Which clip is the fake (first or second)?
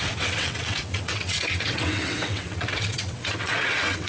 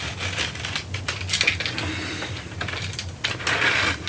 first